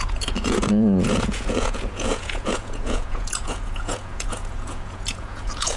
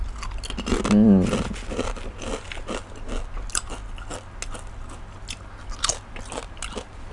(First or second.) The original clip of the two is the second